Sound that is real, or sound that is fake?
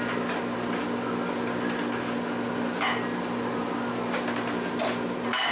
real